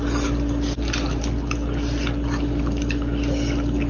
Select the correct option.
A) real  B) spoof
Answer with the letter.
A